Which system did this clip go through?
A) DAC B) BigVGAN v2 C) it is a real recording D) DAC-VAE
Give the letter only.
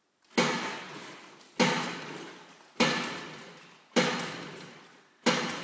C